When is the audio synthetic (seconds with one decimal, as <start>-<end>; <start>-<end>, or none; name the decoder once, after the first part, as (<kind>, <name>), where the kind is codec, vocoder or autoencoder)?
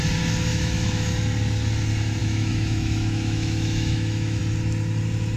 0.5-1.1 (autoencoder, DAC-VAE); 2.2-4.4